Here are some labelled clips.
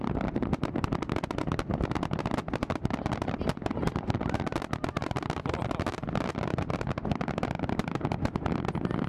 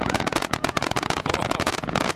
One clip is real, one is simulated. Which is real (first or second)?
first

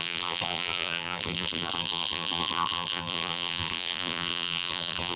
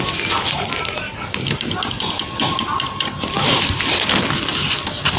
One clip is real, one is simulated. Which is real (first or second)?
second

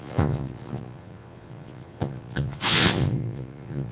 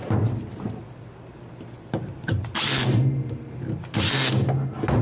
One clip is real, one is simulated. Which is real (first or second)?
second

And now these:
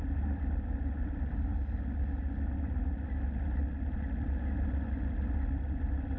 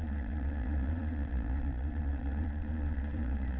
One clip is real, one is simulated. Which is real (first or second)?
first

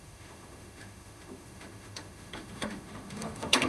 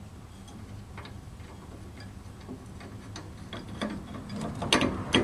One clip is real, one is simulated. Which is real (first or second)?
second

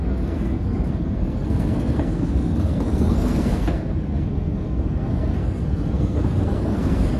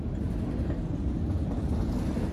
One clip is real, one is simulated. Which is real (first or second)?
second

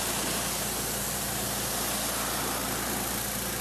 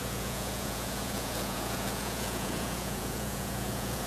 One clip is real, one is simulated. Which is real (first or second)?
first